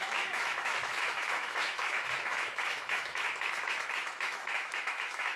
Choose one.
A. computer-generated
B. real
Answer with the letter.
A